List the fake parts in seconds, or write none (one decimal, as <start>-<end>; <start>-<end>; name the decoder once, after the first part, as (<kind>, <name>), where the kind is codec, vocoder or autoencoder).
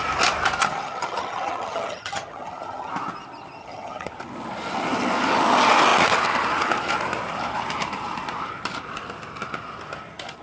0.6-2.9 (vocoder, HiFi-GAN); 3.6-4.1